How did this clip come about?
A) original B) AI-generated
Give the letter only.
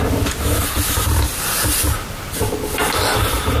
A